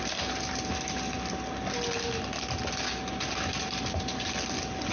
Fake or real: real